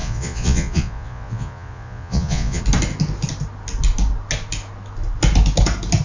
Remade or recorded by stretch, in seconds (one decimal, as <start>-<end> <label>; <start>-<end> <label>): 0.0-2.6 remade; 2.6-6.0 recorded